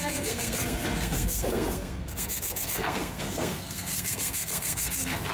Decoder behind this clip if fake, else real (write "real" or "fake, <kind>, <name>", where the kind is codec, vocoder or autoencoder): fake, codec, SNAC